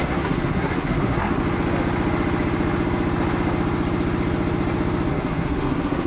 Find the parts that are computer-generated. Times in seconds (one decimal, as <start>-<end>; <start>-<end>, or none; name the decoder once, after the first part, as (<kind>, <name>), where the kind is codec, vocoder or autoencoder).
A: 0.0-1.4 (codec, SNAC); 5.1-6.1

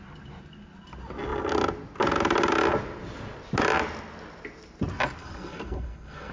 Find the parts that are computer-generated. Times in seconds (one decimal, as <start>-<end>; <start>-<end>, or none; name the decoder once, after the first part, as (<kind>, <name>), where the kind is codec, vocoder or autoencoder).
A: 5.2-6.3 (codec, SNAC)

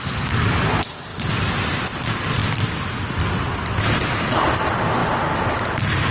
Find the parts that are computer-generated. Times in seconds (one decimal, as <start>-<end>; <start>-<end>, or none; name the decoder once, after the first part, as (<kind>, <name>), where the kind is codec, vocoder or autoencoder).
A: none

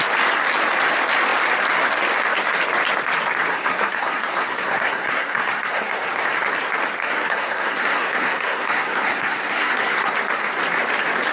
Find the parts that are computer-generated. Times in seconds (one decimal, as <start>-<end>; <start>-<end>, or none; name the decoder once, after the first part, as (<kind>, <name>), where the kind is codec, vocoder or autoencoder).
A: 3.5-6.1 (codec, SNAC); 7.0-10.1